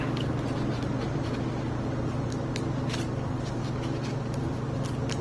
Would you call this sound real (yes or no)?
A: yes